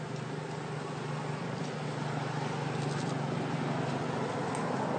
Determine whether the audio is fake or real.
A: real